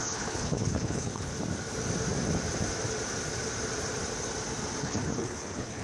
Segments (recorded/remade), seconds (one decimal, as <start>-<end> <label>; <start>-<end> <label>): 0.0-1.3 remade; 1.3-4.8 recorded; 4.8-5.8 remade